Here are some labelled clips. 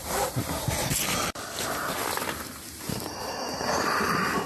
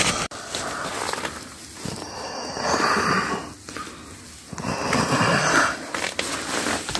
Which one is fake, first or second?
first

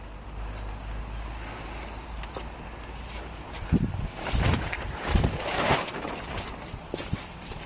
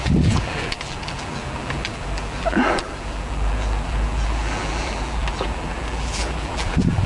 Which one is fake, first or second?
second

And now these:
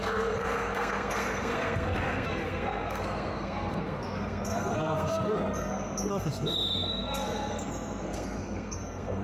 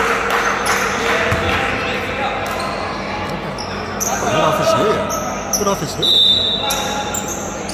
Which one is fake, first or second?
first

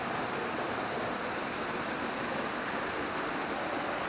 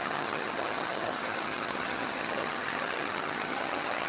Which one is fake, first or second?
second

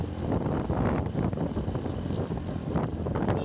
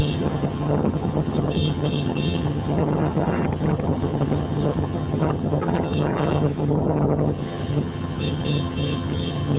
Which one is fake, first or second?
second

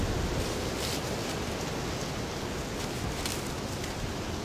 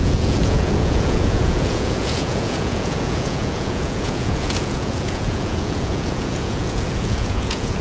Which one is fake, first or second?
second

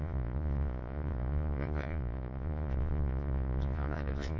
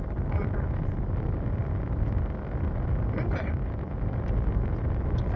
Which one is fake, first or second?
first